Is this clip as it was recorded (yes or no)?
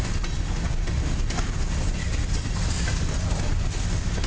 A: yes